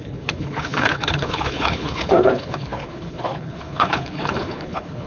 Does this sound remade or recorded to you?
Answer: remade